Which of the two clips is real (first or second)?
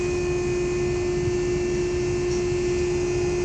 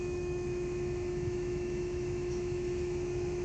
first